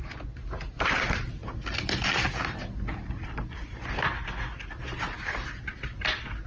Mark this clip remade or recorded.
recorded